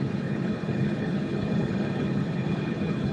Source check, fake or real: fake